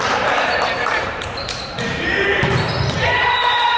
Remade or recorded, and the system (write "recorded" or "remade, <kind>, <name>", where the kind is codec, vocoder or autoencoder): remade, vocoder, BigVGAN v2